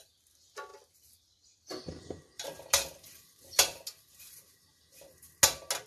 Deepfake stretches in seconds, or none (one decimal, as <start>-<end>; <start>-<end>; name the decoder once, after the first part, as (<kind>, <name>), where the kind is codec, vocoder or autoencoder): none